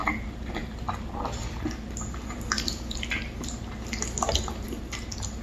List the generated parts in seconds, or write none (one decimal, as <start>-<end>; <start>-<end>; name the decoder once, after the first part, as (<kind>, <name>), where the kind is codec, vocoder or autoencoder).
none